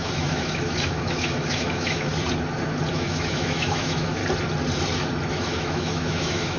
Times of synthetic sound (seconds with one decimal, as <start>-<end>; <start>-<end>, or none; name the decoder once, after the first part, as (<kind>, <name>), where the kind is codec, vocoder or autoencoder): 0.0-2.1 (autoencoder, DAC-VAE); 2.9-4.2; 5.3-6.6